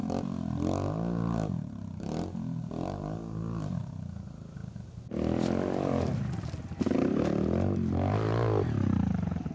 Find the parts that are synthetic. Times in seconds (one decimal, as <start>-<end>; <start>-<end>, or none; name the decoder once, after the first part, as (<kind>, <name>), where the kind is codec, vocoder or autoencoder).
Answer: none